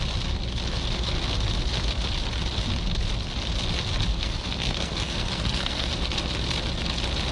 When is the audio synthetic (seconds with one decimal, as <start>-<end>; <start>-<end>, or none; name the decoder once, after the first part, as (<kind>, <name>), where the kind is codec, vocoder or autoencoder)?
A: 4.1-5.9 (codec, SNAC)